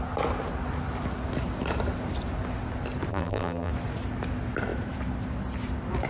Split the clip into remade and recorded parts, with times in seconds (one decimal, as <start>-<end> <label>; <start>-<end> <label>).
0.0-3.1 recorded; 3.1-3.7 remade; 3.7-6.1 recorded